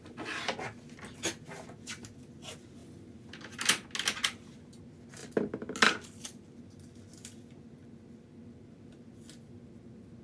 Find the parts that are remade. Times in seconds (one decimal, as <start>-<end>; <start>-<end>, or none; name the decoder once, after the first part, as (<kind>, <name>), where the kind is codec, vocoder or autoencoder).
none